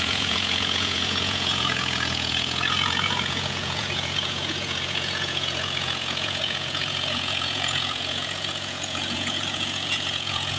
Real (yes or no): no